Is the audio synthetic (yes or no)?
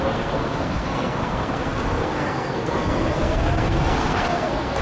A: yes